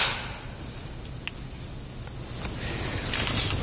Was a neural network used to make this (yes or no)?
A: no